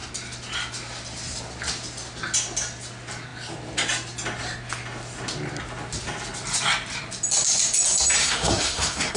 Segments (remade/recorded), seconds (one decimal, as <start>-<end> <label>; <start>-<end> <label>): 0.0-8.2 recorded; 8.2-9.2 remade